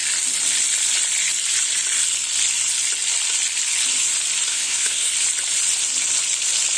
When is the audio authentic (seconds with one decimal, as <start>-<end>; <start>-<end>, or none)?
0.0-4.5; 5.1-6.8